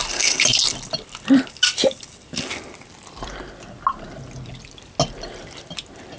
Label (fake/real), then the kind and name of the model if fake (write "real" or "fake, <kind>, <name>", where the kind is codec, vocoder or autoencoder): real